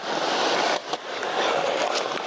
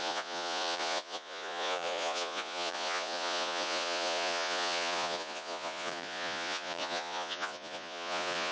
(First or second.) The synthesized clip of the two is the second